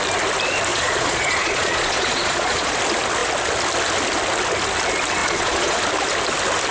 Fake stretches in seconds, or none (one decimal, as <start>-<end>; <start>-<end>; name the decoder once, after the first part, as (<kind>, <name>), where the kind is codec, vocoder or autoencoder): 0.7-2.8 (vocoder, Vocos); 5.2-5.8